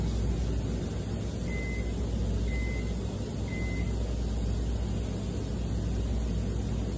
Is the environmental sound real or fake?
real